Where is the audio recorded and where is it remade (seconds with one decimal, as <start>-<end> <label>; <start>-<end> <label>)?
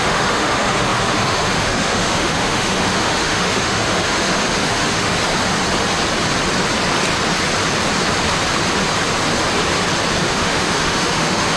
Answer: 0.0-5.2 remade; 5.2-10.3 recorded; 10.3-11.6 remade